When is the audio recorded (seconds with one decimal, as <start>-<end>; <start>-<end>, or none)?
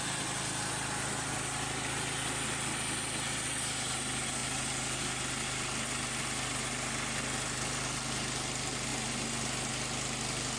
0.0-10.6